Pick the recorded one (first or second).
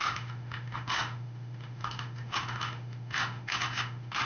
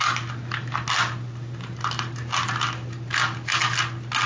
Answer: second